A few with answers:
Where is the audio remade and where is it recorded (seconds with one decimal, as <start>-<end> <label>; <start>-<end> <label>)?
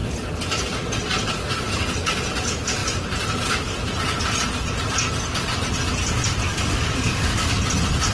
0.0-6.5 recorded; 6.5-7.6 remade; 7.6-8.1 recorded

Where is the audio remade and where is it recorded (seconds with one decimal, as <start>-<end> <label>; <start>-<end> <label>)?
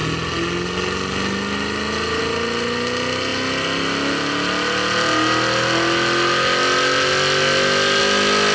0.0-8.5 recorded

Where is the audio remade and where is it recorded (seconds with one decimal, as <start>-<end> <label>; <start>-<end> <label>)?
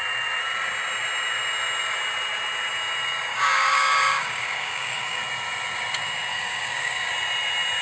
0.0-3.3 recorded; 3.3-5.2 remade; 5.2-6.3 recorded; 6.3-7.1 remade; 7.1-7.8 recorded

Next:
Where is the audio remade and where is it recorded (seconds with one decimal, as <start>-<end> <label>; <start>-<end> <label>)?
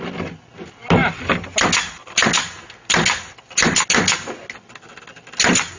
0.0-5.8 recorded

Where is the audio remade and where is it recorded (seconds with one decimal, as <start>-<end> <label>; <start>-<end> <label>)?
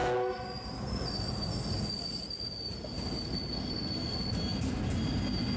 0.0-5.6 recorded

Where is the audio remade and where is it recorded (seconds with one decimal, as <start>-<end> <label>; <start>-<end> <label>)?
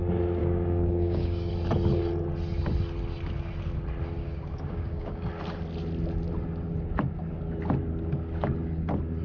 0.0-0.4 recorded; 0.4-1.5 remade; 1.5-4.2 recorded; 4.2-5.3 remade; 5.3-9.2 recorded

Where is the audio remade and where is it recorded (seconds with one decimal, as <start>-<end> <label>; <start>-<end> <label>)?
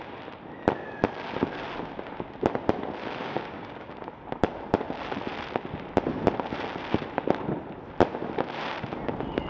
0.0-3.2 recorded; 3.2-4.0 remade; 4.0-9.5 recorded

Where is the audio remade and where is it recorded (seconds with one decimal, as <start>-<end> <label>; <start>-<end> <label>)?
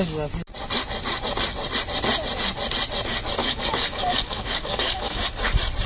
0.0-3.4 recorded; 3.4-5.2 remade; 5.2-5.9 recorded